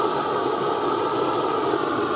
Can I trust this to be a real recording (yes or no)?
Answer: yes